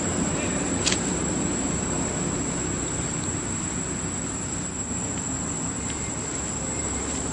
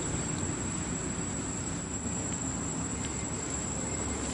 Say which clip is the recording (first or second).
first